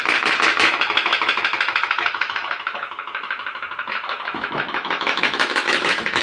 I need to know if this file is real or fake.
fake